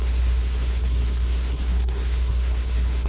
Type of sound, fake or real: fake